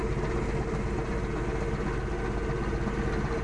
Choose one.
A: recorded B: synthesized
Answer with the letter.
A